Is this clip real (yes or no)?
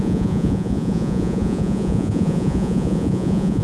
no